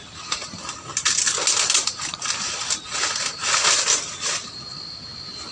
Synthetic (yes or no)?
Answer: no